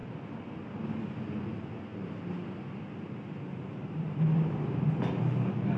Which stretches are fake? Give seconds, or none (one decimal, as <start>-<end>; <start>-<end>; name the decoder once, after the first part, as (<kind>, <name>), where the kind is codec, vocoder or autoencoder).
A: 0.0-0.6 (vocoder, BigVGAN v2); 3.5-5.8